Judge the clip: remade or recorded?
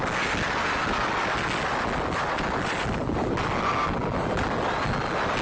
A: recorded